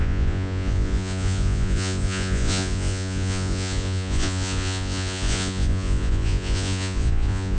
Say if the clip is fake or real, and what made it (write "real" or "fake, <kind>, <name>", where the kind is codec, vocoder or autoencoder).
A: fake, vocoder, Vocos